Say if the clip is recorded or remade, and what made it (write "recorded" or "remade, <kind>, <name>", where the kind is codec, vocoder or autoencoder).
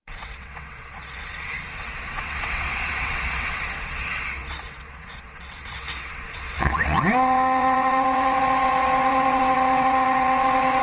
remade, vocoder, WaveNeXt